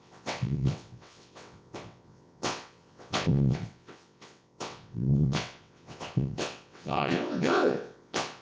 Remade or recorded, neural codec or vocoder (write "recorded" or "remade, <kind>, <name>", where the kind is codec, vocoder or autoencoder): remade, vocoder, WaveNeXt